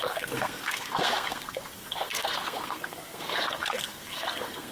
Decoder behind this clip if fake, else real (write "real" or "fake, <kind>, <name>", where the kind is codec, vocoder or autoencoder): fake, codec, SNAC